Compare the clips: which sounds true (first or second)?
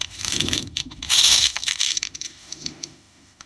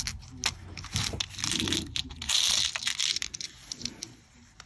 second